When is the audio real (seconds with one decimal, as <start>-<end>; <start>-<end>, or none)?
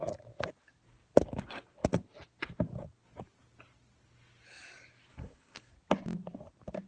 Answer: 0.0-5.1; 5.7-6.9